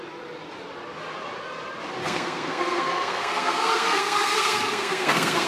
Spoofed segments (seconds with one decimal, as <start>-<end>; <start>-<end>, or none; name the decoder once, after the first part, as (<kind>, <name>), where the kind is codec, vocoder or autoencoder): 2.0-5.5 (codec, SNAC)